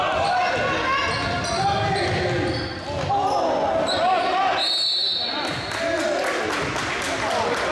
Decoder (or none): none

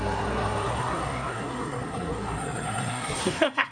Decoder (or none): codec, SNAC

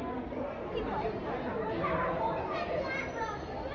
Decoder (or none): none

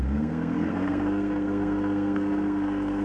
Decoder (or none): codec, SNAC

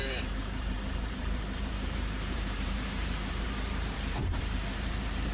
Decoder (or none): vocoder, BigVGAN v2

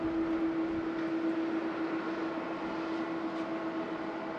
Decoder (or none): none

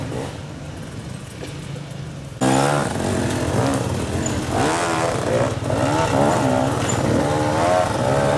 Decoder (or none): none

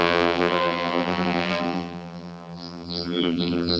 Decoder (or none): vocoder, BigVGAN v2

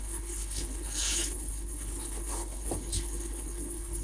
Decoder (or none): codec, HILCodec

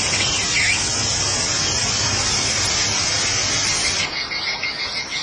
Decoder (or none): none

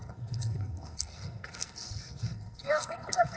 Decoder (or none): codec, SNAC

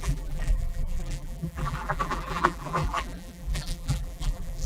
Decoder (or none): vocoder, BigVGAN v2